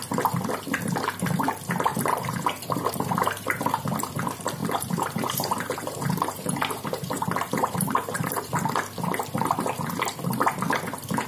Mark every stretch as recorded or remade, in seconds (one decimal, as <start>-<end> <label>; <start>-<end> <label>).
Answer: 0.0-1.9 recorded; 1.9-4.1 remade; 4.1-4.6 recorded; 4.6-8.5 remade; 8.5-11.3 recorded